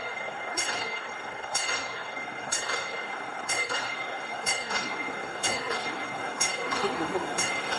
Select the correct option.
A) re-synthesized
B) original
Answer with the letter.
A